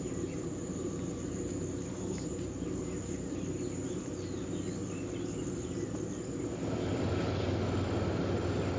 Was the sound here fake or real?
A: real